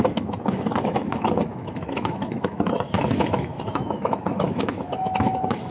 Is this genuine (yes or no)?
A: no